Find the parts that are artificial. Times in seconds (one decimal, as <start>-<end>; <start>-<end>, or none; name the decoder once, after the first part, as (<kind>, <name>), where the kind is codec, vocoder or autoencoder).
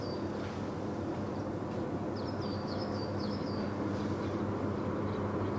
2.5-3.6 (autoencoder, DAC-VAE)